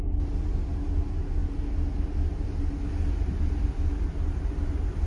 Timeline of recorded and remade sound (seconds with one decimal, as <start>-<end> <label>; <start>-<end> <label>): 0.0-5.1 recorded